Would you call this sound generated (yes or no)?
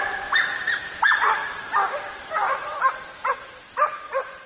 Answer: yes